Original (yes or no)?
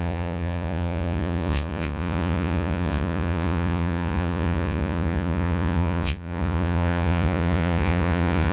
no